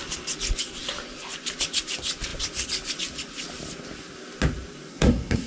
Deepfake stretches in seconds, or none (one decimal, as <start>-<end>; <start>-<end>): 4.9-5.5